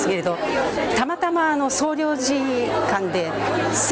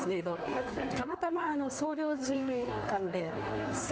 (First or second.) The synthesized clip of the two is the second